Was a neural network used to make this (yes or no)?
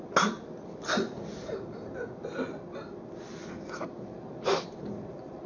no